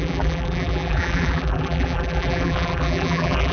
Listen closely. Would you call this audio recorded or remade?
remade